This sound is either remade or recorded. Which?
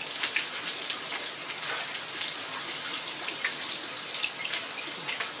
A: recorded